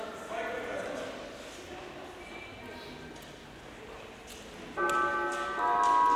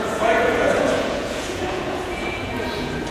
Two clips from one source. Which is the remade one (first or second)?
second